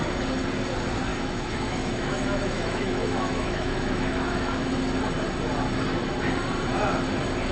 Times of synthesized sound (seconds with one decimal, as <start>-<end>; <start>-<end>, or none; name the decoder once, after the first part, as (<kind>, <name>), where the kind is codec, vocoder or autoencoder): 1.1-4.7 (autoencoder, DAC-VAE)